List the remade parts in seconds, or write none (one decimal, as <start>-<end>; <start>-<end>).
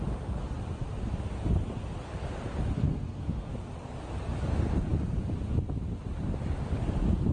2.8-3.5